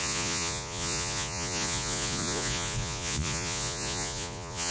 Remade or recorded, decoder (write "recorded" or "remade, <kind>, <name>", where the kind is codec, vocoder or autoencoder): remade, vocoder, Vocos